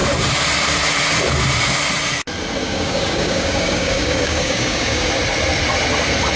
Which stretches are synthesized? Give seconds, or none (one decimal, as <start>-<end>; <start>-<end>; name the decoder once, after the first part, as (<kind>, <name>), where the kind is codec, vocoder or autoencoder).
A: 2.6-5.1 (codec, DAC)